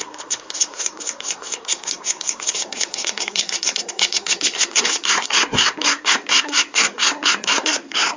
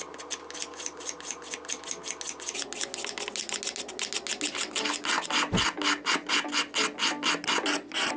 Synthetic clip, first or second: first